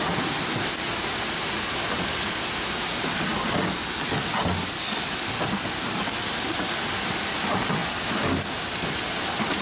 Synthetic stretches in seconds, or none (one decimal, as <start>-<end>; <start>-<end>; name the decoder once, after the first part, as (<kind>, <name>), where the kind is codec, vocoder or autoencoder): none